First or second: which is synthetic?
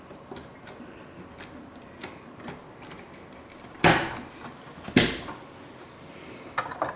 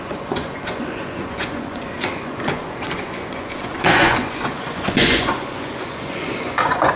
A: second